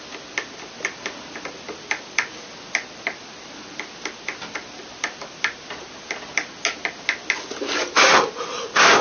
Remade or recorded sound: recorded